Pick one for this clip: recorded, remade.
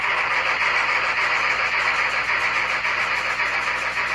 recorded